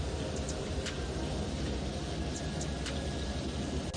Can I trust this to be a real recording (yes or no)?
yes